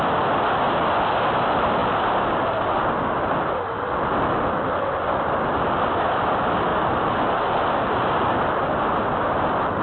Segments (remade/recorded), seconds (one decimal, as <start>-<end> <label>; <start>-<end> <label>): 0.0-9.8 recorded